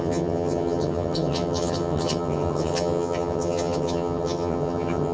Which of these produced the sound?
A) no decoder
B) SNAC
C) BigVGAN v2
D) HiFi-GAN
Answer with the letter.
D